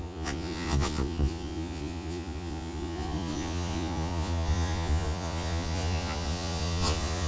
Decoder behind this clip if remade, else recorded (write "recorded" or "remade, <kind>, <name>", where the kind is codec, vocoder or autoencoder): remade, vocoder, Vocos